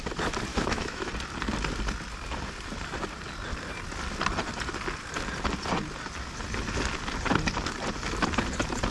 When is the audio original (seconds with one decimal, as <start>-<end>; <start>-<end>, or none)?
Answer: 0.0-0.5; 1.1-8.9

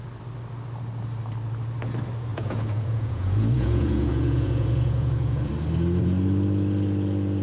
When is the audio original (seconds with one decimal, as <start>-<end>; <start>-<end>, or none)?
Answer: 0.0-2.3; 5.5-7.4

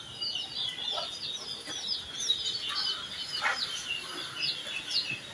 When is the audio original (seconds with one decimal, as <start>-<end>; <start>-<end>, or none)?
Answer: 0.0-3.5; 4.1-5.3

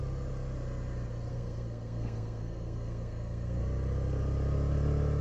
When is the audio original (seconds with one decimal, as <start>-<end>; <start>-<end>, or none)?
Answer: 0.0-1.3; 3.6-5.2